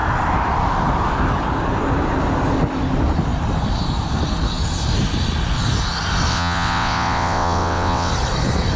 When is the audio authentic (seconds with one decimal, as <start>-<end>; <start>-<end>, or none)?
0.0-6.3; 8.1-8.8